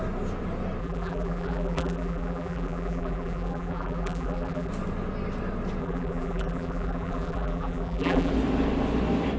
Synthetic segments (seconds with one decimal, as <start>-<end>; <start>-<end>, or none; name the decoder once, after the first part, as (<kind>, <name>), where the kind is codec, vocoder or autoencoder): 0.8-4.7 (vocoder, BigVGAN v2); 5.8-8.3